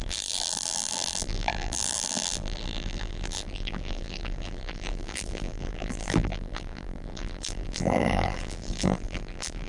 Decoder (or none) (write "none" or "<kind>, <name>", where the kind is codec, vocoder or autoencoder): vocoder, BigVGAN v2